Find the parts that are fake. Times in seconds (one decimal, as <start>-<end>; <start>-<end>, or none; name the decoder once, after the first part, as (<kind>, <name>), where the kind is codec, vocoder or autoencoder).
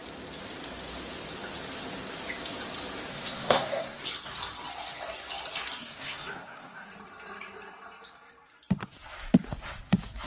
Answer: 3.1-4.0 (codec, SNAC); 5.8-6.9